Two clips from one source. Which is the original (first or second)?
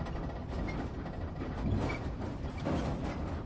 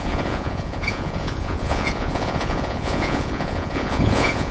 first